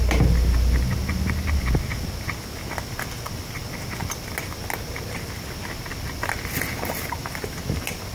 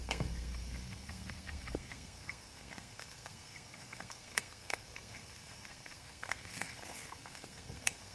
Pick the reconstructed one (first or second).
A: second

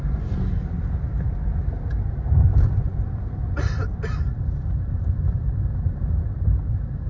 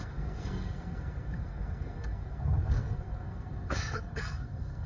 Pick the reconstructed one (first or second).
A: second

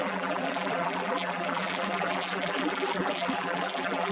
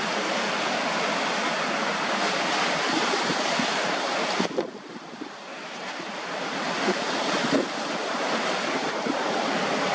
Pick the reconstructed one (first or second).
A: first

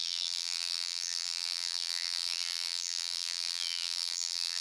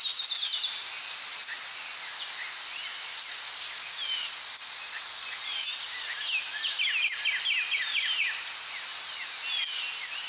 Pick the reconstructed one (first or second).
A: first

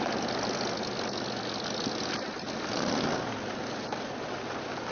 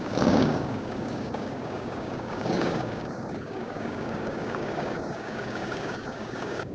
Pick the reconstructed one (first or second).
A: second